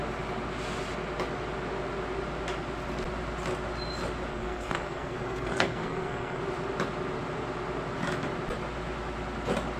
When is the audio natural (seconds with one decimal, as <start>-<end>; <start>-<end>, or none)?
0.0-4.3; 6.4-9.8